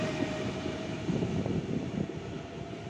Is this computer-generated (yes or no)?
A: yes